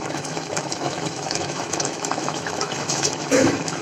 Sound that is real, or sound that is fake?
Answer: fake